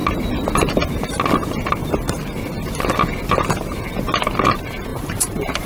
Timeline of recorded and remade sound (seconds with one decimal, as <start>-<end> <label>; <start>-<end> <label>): 0.0-4.9 recorded; 4.9-5.7 remade